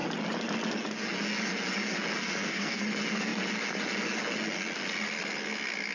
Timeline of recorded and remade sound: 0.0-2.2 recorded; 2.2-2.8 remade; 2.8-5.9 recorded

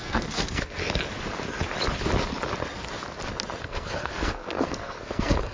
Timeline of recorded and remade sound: 0.0-0.8 remade; 0.8-3.6 recorded; 3.6-5.5 remade

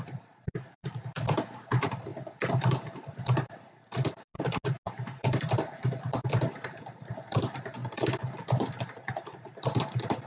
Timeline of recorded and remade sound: 0.0-2.1 remade; 2.1-2.9 recorded; 2.9-4.3 remade; 4.3-7.2 recorded; 7.2-7.8 remade; 7.8-9.5 recorded; 9.5-10.3 remade

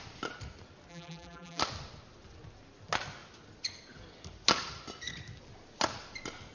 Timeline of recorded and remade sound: 0.0-0.9 recorded; 0.9-1.6 remade; 1.6-6.5 recorded

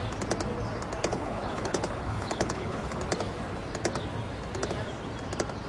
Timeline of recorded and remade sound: 0.0-1.0 recorded; 1.0-3.0 remade; 3.0-5.7 recorded

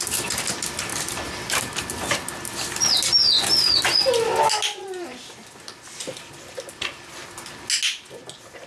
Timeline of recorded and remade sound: 0.0-8.7 recorded

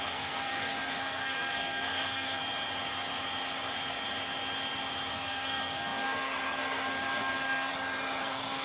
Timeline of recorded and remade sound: 0.0-2.4 remade; 2.4-5.1 recorded; 5.1-7.7 remade; 7.7-8.2 recorded; 8.2-8.6 remade

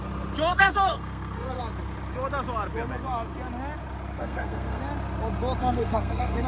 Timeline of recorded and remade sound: 0.0-0.5 recorded; 0.5-1.6 remade; 1.6-4.2 recorded; 4.2-4.8 remade; 4.8-5.6 recorded; 5.6-6.5 remade